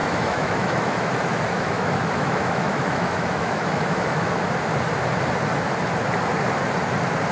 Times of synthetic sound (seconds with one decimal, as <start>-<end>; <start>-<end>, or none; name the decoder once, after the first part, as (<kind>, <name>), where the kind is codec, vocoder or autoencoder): 0.0-4.4 (autoencoder, DAC-VAE)